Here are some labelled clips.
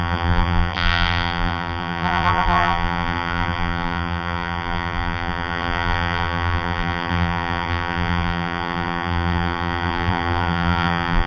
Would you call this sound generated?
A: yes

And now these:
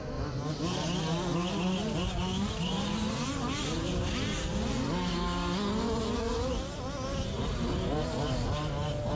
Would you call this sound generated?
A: no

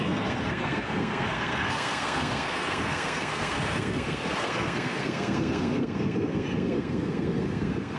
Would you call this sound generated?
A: yes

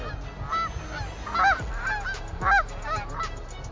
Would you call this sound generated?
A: no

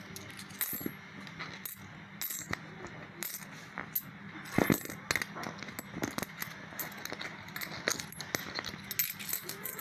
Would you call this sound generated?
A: no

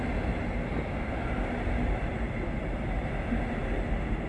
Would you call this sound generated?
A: no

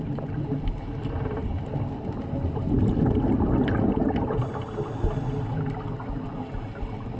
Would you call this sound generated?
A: no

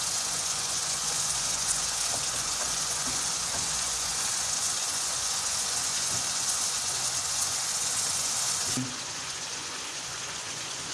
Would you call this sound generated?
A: yes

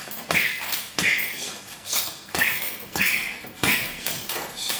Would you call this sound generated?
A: yes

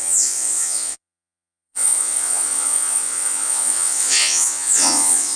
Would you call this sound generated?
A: yes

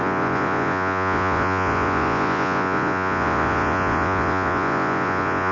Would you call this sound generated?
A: yes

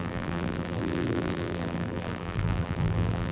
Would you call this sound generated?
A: yes